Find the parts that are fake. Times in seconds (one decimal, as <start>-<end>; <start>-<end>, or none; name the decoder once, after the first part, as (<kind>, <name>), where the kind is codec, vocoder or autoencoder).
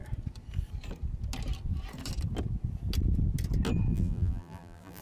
3.9-5.0 (vocoder, BigVGAN v2)